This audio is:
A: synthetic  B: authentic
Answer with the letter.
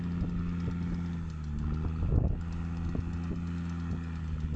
B